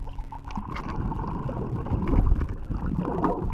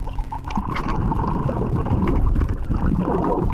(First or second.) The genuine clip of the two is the first